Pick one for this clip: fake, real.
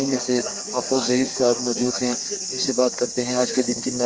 fake